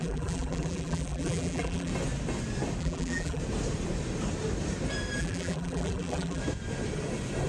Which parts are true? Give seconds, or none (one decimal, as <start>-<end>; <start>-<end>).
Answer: 1.9-2.8; 3.4-5.2; 6.4-7.5